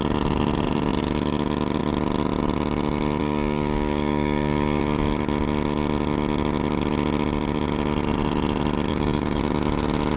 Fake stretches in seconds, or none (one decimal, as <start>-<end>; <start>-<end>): 3.2-4.8; 8.9-9.4